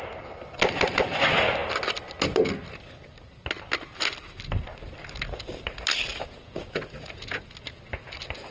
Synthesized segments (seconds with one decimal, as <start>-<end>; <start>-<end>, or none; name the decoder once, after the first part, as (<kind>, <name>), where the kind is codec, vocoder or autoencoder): 6.1-7.5 (vocoder, Vocos)